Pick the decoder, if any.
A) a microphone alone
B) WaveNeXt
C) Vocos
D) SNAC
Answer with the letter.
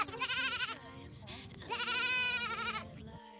A